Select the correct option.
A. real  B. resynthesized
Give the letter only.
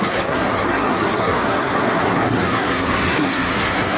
B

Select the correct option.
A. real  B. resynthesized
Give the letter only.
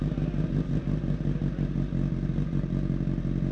A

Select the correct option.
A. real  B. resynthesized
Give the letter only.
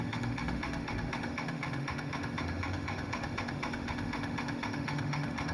B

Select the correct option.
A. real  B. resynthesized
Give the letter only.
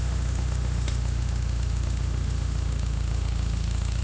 B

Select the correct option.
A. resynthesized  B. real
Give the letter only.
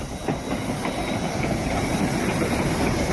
B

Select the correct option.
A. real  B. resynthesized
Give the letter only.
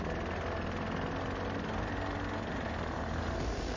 A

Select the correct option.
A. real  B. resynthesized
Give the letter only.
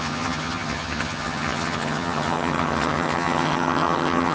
B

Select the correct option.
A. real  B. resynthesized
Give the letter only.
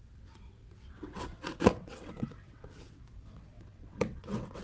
B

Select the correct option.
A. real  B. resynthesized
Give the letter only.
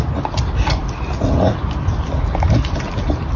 A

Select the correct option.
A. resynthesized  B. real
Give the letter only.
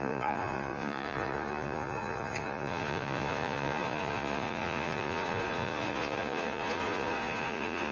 A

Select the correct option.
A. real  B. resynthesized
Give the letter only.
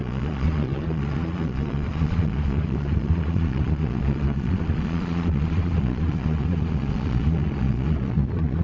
B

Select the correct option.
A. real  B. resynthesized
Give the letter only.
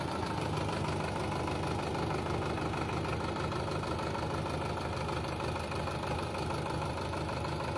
A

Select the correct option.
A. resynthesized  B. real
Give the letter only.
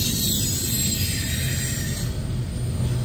B